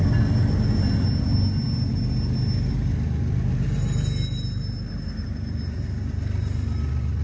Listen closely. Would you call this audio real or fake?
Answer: real